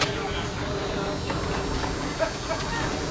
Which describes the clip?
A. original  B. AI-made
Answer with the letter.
A